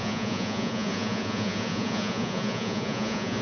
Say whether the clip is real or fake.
fake